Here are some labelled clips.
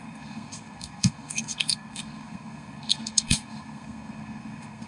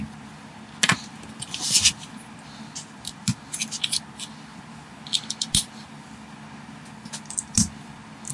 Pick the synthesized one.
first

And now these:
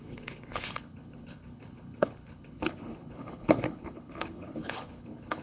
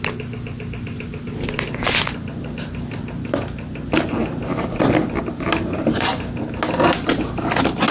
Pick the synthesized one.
first